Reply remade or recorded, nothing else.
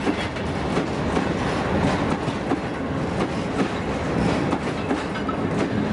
recorded